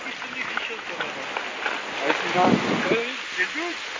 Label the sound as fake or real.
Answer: real